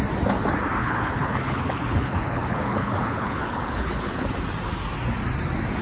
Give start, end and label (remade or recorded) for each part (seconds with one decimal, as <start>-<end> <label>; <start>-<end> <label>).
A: 0.0-0.8 recorded; 0.8-4.3 remade; 4.3-5.8 recorded